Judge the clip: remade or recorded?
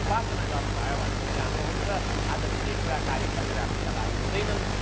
recorded